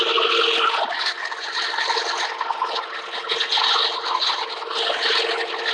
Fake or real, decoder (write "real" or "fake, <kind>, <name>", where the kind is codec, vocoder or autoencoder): real